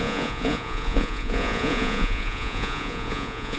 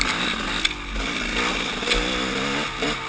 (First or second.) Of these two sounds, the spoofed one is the first